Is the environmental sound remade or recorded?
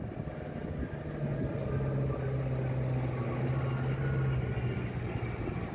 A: recorded